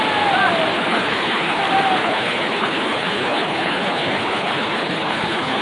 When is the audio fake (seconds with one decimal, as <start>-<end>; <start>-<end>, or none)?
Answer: 0.7-1.6; 2.0-5.6